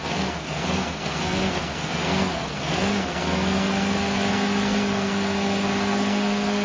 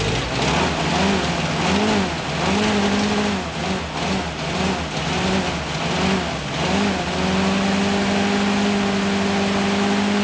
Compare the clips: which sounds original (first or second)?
second